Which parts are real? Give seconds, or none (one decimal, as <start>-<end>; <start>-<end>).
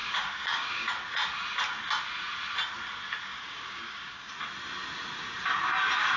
0.9-3.3; 4.3-6.2